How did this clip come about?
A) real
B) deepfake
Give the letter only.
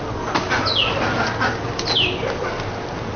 A